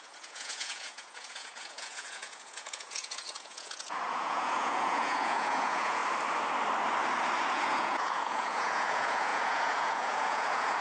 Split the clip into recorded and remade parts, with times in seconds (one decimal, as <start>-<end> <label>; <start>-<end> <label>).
0.0-6.0 remade; 6.0-7.5 recorded; 7.5-10.8 remade